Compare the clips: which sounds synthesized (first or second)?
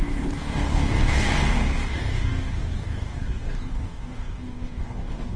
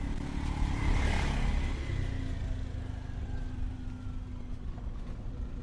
first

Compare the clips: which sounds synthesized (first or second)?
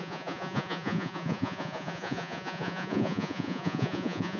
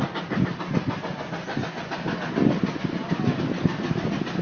first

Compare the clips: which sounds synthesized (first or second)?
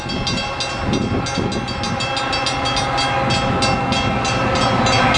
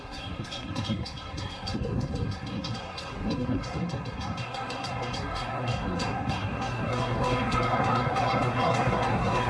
second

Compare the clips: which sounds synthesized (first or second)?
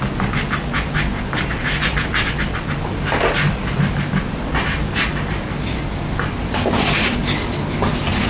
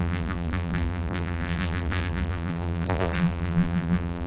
second